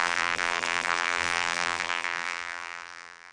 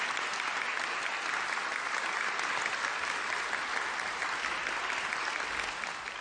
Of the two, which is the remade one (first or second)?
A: first